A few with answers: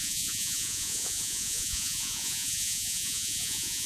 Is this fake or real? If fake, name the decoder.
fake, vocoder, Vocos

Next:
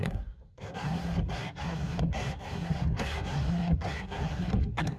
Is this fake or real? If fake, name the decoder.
fake, codec, SNAC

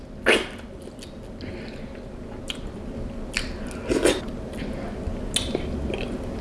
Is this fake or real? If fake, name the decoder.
real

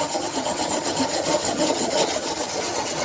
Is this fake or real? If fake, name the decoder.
fake, vocoder, HiFi-GAN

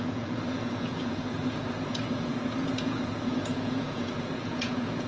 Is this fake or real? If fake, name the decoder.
fake, vocoder, Vocos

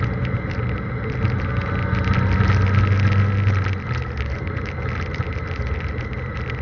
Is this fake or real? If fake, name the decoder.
real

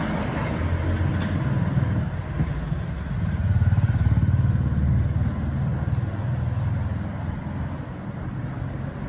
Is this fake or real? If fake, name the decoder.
real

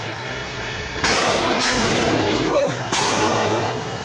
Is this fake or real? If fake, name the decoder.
fake, codec, SNAC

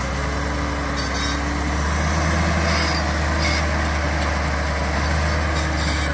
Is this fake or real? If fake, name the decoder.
real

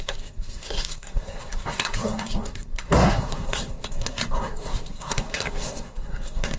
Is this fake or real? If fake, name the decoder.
fake, codec, SNAC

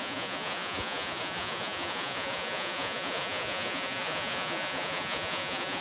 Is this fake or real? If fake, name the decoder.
fake, vocoder, Vocos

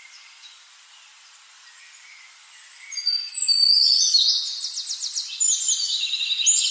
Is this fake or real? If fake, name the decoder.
real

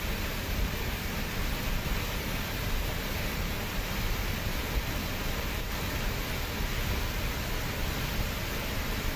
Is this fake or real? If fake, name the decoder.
real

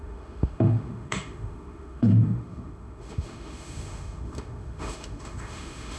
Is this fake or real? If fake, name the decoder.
fake, autoencoder, DAC-VAE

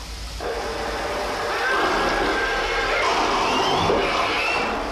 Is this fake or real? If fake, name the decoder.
real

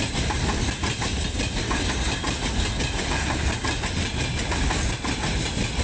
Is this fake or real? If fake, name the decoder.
real